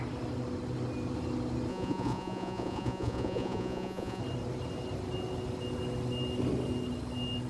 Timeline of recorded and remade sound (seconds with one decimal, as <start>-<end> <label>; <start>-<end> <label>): 0.0-1.7 recorded; 1.7-4.2 remade; 4.2-7.5 recorded